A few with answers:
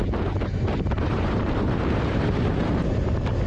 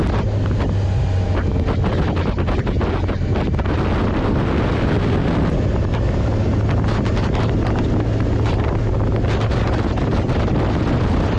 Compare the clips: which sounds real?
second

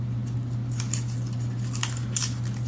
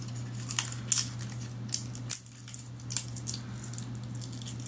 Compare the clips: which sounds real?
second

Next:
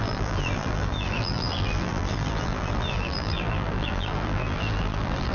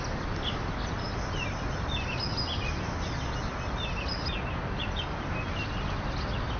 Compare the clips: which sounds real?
second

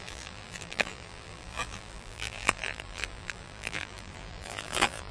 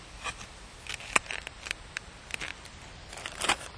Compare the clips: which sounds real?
second